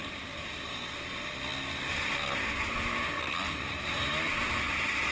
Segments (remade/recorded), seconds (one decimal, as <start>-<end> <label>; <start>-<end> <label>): 0.0-5.1 recorded